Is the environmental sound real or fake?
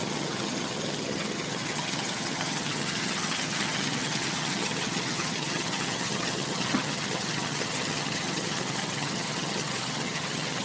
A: fake